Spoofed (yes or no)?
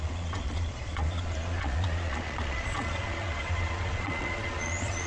yes